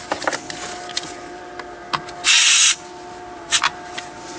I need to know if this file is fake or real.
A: real